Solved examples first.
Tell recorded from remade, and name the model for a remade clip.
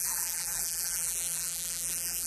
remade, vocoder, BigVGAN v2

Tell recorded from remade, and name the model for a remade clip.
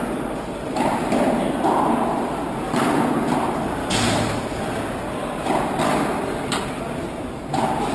recorded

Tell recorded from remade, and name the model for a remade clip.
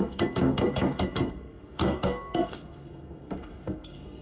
remade, codec, SNAC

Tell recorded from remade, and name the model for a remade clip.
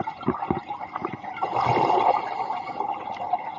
recorded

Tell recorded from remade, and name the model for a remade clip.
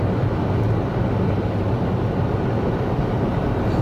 recorded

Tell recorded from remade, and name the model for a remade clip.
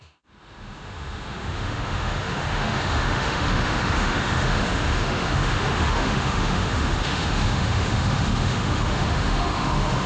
remade, autoencoder, DAC-VAE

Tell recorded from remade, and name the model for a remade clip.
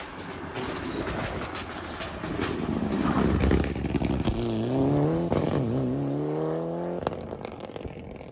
recorded